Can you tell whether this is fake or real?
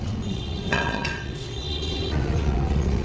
fake